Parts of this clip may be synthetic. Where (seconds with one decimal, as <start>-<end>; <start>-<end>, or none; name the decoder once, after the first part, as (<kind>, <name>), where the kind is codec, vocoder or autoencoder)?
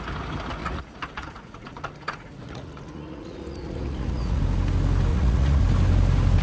0.6-4.4 (vocoder, Vocos); 5.1-5.6